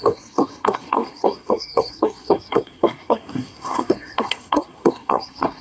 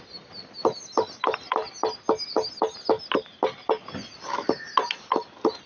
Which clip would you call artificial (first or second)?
first